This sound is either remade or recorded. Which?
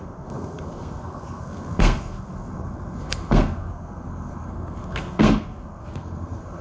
remade